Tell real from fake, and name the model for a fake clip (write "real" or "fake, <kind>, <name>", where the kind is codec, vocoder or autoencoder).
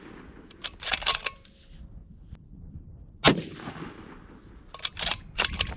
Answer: real